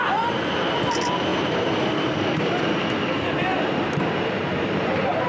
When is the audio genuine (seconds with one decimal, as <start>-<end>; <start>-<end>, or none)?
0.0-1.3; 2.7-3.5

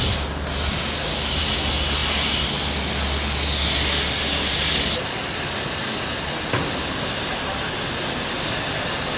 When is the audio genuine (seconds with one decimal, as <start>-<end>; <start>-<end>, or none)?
0.0-9.2

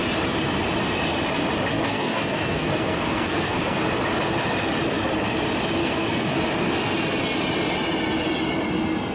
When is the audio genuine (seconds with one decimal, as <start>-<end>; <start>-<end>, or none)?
0.0-1.7; 3.9-5.8; 6.4-9.1